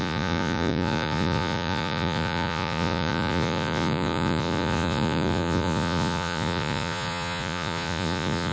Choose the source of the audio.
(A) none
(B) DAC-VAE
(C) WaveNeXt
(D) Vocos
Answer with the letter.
D